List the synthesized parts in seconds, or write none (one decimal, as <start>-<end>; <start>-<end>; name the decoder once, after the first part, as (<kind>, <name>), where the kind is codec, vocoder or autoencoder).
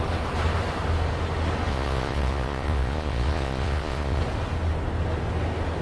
1.7-4.2 (vocoder, Vocos)